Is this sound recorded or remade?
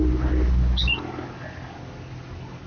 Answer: recorded